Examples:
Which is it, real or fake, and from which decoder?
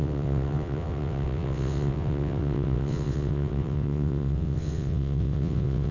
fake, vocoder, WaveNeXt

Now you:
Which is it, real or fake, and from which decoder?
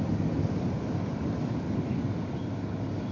real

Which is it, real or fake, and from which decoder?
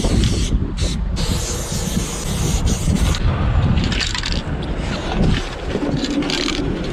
real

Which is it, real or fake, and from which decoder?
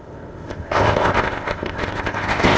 fake, codec, ZipCodec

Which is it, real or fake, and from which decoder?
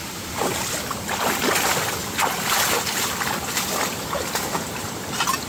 real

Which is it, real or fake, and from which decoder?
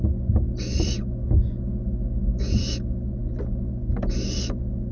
real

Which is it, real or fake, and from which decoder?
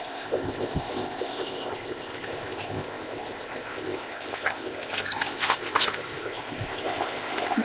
fake, codec, ZipCodec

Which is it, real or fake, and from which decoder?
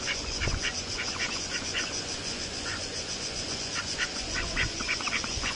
fake, vocoder, Vocos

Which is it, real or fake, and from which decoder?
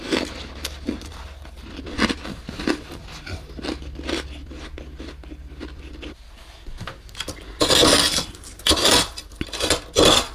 real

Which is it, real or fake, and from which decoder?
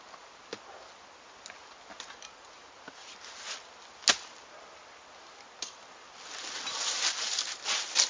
real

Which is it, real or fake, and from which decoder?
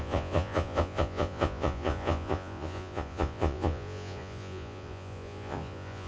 fake, vocoder, Vocos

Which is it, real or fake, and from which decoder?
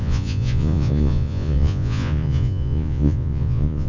fake, vocoder, Vocos